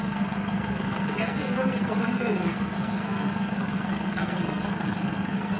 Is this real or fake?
fake